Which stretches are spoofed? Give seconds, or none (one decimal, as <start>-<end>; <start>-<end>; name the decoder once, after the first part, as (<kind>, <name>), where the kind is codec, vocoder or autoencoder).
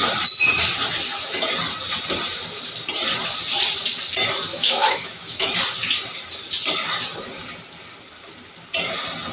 4.5-5.6 (autoencoder, DAC-VAE)